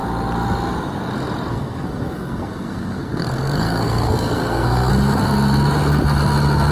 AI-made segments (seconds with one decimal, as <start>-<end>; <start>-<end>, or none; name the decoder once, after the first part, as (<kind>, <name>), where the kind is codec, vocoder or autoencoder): 1.5-4.9 (codec, SNAC)